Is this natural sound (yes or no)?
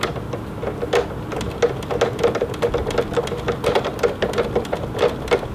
yes